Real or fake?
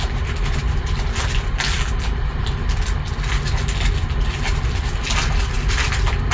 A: real